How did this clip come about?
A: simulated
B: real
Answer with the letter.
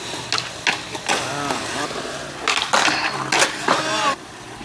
B